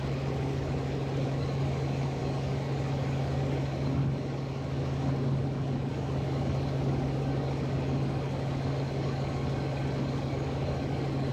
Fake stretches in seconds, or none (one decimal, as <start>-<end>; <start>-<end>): 0.0-11.3